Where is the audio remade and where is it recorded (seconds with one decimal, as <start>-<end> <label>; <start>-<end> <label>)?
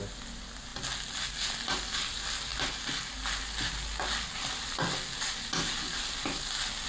0.0-6.9 recorded